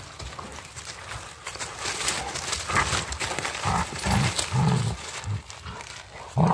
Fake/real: real